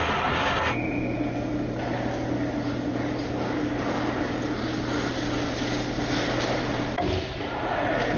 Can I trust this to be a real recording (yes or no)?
yes